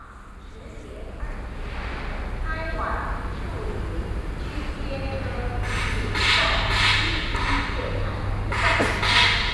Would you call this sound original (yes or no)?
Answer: yes